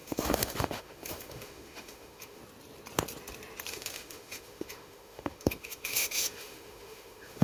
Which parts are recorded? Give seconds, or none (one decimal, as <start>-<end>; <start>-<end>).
2.4-3.7